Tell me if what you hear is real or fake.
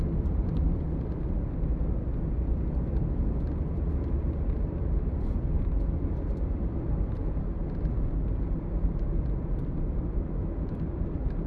fake